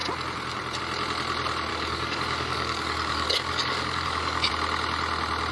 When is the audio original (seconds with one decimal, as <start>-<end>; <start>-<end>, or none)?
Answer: 0.0-1.7; 4.5-5.5